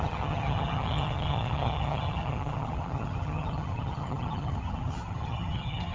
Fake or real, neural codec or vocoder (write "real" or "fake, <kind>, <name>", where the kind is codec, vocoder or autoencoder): fake, vocoder, HiFi-GAN